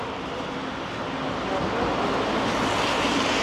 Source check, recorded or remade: recorded